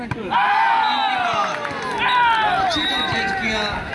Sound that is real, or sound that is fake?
real